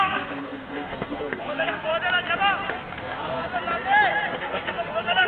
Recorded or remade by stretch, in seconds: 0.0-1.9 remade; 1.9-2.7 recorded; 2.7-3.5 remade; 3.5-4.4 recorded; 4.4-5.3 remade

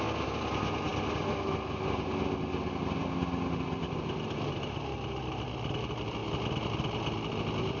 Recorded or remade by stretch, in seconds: 0.0-7.8 recorded